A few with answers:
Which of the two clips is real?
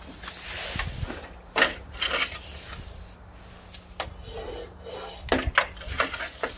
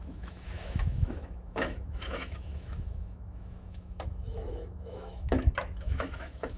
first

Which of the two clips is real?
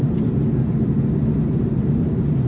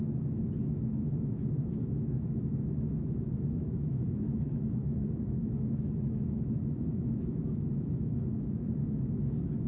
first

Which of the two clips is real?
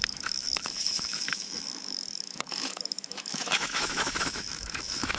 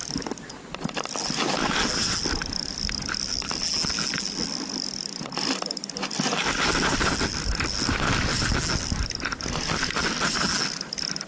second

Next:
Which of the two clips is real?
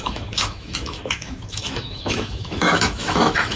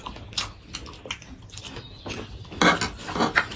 second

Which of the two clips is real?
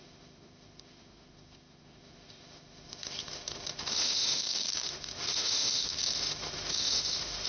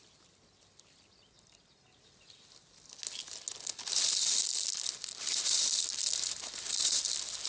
second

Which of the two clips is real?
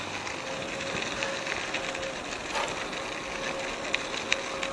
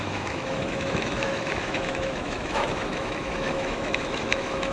first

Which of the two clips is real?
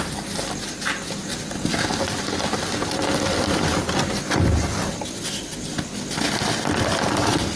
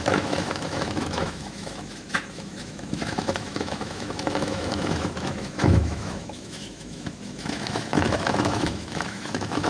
first